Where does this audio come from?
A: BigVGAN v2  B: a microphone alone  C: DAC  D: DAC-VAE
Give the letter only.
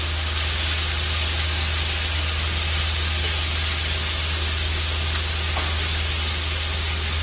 B